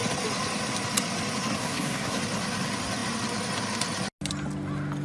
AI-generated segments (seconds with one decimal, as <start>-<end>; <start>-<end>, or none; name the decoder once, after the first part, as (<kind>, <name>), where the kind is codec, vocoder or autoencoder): 1.6-2.2 (codec, SNAC)